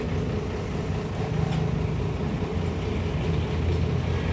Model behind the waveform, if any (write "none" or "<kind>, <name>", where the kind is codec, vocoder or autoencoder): none